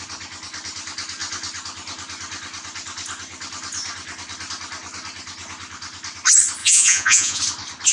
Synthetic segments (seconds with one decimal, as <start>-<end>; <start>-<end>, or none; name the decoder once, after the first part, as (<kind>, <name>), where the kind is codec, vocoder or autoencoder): 6.6-7.4 (vocoder, Vocos)